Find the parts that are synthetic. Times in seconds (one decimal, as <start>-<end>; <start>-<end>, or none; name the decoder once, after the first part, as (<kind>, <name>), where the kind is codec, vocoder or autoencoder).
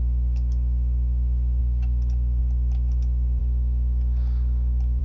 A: 1.6-2.4 (vocoder, BigVGAN v2); 3.4-5.0